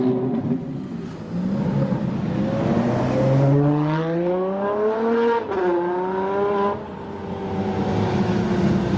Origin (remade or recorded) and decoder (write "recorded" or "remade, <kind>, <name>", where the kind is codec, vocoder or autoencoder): recorded